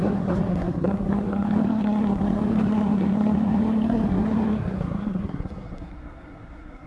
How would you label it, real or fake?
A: fake